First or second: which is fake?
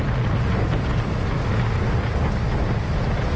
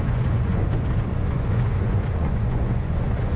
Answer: second